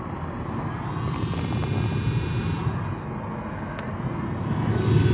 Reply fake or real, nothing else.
real